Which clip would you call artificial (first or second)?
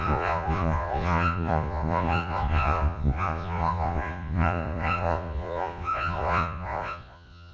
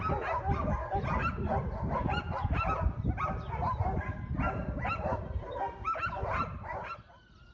first